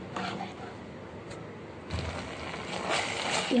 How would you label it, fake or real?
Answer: real